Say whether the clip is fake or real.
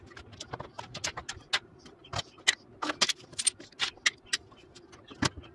real